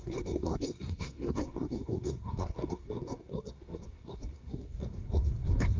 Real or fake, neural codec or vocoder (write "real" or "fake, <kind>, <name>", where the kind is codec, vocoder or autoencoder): fake, codec, SNAC